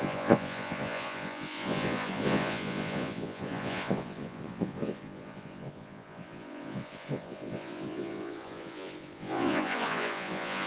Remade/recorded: remade